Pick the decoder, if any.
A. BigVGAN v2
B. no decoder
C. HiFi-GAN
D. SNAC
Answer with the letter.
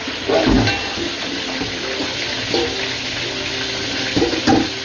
B